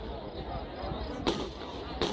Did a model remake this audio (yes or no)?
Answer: no